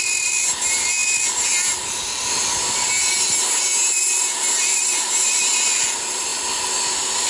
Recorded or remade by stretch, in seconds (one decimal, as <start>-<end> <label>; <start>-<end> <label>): 0.0-7.3 recorded